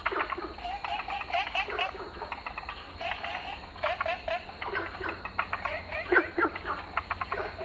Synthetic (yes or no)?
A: no